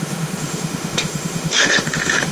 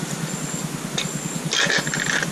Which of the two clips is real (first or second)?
second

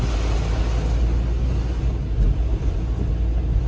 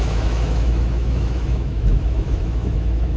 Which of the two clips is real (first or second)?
first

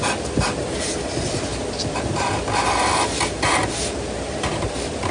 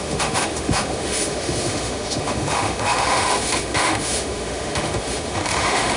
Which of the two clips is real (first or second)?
first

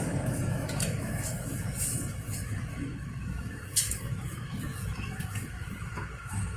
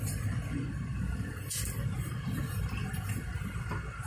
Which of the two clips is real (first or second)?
second